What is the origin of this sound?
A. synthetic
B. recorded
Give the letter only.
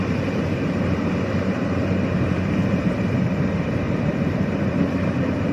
A